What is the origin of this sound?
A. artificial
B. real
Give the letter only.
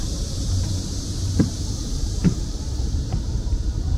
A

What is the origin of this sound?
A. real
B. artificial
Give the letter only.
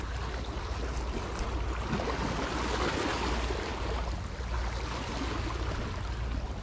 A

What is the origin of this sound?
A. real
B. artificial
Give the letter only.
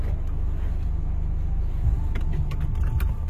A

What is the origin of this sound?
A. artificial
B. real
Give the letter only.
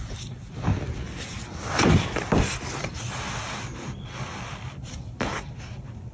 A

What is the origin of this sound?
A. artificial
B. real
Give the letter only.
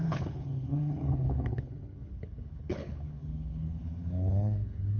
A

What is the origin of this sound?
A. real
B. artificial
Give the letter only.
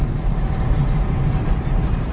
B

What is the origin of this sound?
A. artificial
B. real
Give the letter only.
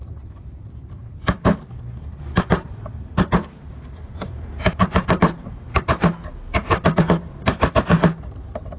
A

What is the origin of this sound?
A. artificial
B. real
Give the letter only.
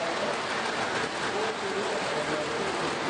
B